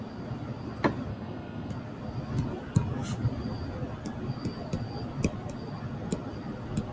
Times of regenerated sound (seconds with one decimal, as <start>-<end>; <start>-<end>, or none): 1.1-1.7